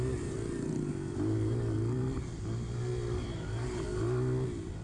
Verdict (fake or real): real